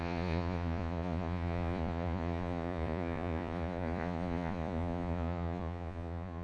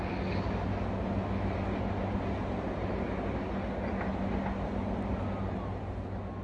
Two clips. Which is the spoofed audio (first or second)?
first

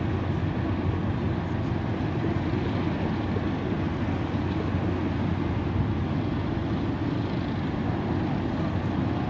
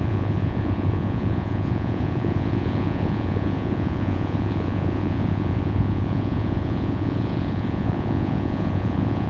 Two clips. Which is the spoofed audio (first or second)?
second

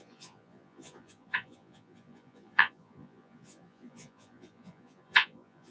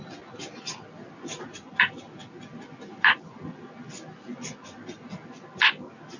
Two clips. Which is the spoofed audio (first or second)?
first